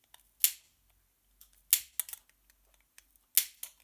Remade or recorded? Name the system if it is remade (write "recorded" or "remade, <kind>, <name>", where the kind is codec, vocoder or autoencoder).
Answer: recorded